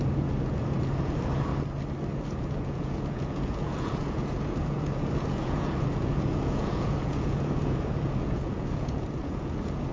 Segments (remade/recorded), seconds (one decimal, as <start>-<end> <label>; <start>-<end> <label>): 0.0-1.5 remade; 1.5-2.1 recorded; 2.1-9.9 remade